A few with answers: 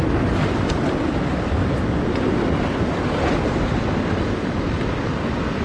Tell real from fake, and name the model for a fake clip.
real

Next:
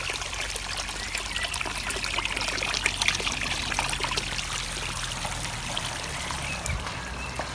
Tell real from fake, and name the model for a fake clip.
real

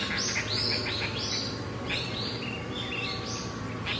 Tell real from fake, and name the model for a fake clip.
real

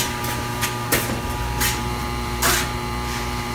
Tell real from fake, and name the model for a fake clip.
fake, vocoder, BigVGAN v2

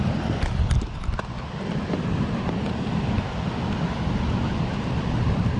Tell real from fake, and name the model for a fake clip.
fake, vocoder, BigVGAN v2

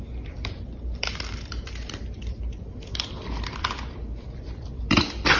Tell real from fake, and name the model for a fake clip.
fake, vocoder, BigVGAN v2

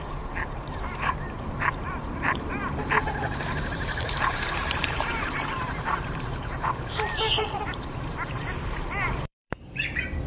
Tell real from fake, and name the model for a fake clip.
fake, vocoder, BigVGAN v2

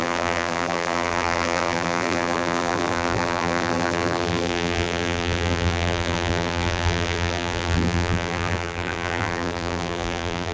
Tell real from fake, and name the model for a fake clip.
fake, vocoder, BigVGAN v2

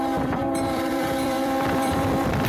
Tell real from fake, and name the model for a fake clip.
fake, vocoder, BigVGAN v2